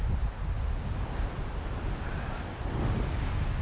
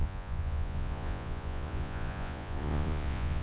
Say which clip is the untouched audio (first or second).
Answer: first